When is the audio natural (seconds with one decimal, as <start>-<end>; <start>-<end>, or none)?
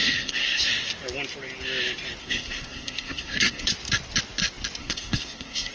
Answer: 0.6-2.2; 3.7-4.8